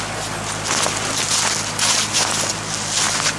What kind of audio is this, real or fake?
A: real